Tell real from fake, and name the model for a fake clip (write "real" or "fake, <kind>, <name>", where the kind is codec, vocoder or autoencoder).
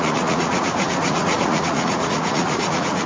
fake, vocoder, Vocos